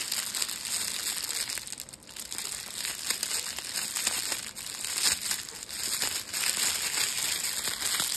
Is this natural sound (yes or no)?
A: yes